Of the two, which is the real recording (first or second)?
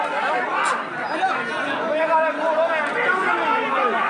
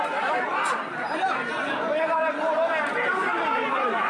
first